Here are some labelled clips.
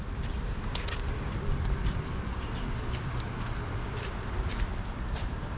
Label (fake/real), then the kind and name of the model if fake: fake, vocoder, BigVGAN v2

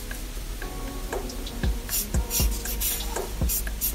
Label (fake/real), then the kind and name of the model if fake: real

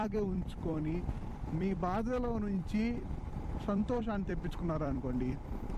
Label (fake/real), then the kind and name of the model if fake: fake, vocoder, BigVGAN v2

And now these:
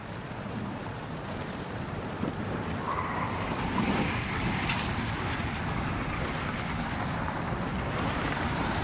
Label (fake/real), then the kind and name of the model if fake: fake, vocoder, BigVGAN v2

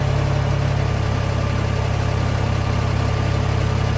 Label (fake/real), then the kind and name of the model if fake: real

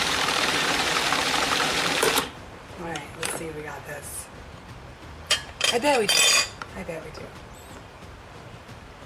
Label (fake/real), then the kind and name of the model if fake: fake, vocoder, BigVGAN v2